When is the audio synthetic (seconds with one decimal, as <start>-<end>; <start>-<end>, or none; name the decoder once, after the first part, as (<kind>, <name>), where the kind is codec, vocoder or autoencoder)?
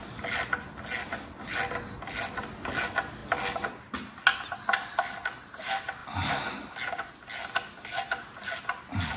none